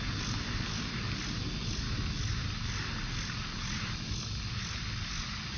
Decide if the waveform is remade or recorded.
recorded